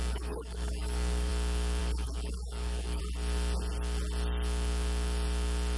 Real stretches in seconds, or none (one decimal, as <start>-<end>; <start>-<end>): 1.3-1.8; 3.0-5.8

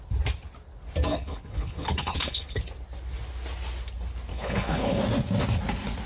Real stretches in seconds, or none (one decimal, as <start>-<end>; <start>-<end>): 0.0-1.1; 2.6-4.3; 5.0-6.1

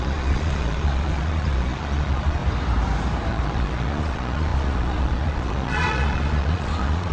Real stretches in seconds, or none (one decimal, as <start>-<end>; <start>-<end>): 2.4-3.3

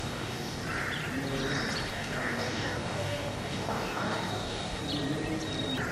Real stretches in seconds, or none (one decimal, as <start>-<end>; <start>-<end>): 0.6-1.9; 4.8-5.9

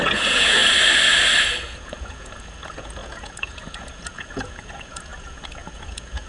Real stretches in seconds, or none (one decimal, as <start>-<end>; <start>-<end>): 0.6-1.6